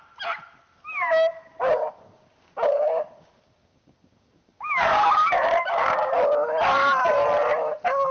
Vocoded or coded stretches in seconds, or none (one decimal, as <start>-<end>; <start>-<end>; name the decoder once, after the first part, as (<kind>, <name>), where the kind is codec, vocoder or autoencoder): 1.3-6.1 (codec, DAC)